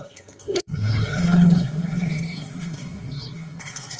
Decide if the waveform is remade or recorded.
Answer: remade